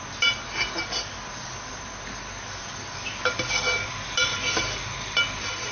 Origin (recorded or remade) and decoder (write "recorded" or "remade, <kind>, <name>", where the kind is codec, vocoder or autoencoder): recorded